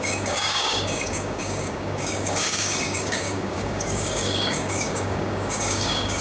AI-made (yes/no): yes